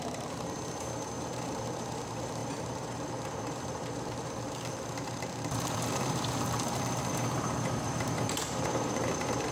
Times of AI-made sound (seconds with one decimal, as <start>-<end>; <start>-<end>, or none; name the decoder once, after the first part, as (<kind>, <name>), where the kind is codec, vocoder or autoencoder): 0.0-9.5 (vocoder, BigVGAN v2)